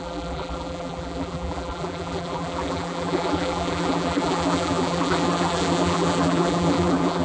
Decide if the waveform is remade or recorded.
remade